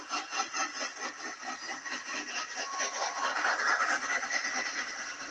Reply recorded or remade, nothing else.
recorded